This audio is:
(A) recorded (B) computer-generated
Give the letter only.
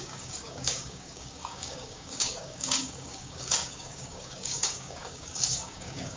B